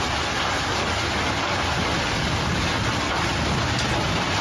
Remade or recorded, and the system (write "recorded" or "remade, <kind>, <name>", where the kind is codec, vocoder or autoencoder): recorded